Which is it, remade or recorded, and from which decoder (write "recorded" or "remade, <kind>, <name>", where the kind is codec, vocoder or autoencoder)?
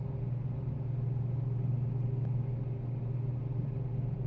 recorded